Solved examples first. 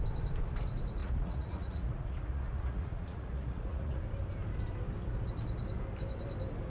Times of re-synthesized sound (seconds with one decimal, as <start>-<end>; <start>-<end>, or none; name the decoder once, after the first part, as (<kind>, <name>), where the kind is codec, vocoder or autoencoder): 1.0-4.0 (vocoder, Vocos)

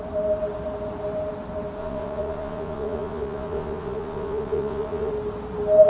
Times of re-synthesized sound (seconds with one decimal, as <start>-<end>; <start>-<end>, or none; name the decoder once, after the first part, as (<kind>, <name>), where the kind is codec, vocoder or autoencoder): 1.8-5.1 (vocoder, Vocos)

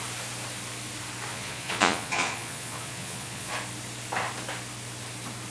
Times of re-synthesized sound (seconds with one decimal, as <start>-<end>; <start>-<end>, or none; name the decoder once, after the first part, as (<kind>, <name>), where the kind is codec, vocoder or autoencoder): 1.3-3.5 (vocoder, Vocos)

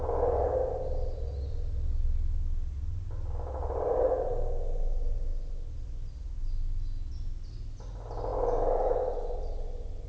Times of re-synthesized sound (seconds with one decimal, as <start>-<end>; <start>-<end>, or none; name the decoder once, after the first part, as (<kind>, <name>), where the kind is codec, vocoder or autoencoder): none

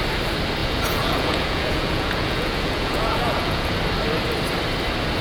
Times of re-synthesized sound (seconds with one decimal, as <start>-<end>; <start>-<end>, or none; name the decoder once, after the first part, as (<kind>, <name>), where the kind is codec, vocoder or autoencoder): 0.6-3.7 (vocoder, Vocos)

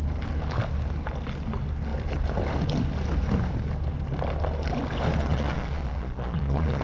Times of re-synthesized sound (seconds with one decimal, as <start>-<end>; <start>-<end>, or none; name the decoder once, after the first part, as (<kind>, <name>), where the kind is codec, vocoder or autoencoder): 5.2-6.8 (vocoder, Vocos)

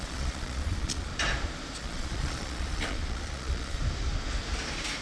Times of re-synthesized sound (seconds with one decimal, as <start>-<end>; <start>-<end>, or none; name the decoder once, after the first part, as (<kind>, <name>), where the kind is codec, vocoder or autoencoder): 0.0-1.1 (vocoder, Vocos); 1.8-3.8

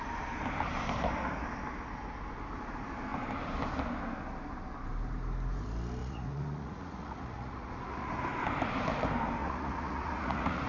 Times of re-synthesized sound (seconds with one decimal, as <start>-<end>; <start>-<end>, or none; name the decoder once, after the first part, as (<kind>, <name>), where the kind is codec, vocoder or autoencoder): 6.0-8.2 (vocoder, Vocos); 9.4-10.7